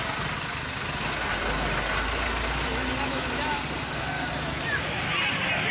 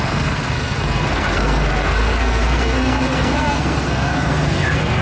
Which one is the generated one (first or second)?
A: second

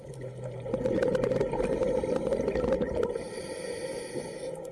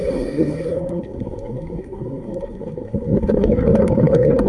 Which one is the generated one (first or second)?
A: second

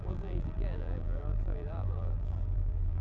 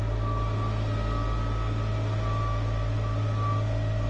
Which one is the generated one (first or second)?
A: first